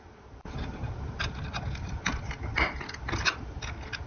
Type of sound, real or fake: real